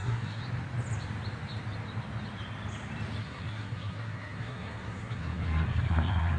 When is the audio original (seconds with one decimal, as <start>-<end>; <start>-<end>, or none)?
0.4-3.2

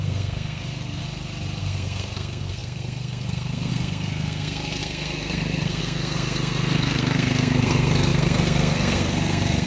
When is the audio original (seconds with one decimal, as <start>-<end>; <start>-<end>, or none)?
1.0-1.6

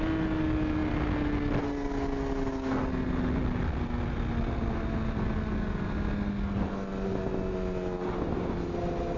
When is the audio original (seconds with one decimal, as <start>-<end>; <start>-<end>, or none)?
0.0-9.2

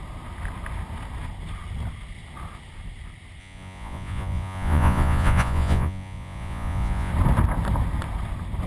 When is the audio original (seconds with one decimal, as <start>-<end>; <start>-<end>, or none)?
0.0-3.4; 7.1-8.7

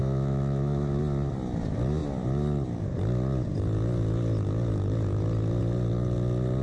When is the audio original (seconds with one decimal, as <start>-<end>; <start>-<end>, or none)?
1.0-6.6